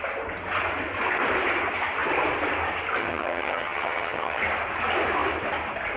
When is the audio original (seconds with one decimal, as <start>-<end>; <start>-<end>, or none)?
0.0-3.0; 4.4-6.0